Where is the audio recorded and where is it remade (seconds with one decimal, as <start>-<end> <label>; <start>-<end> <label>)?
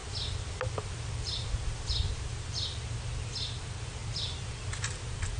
0.0-4.0 recorded; 4.0-4.8 remade; 4.8-5.4 recorded